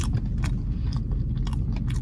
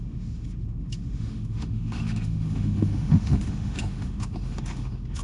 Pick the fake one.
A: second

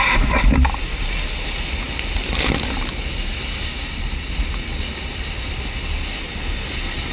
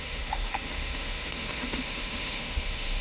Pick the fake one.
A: second